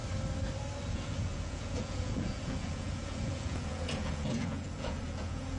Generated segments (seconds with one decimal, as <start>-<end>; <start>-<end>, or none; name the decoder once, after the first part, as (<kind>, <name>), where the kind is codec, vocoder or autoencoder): 0.9-5.6 (vocoder, Vocos)